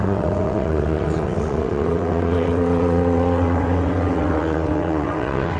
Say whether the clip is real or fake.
fake